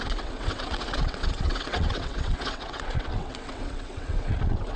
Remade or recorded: remade